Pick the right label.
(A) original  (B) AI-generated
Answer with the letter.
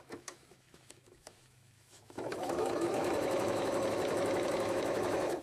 B